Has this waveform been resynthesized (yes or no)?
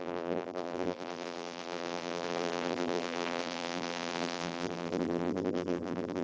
yes